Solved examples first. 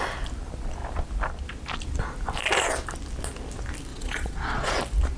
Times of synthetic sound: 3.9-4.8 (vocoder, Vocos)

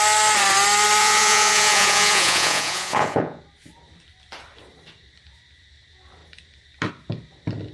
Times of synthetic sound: 1.0-3.4 (vocoder, Vocos)

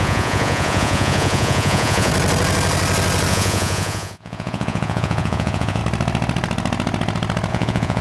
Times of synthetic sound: 0.0-2.1 (vocoder, Vocos); 3.3-5.8; 7.5-8.0

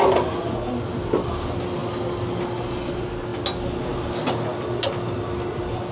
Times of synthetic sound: none